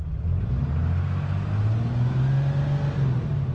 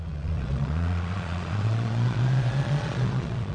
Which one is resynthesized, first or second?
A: second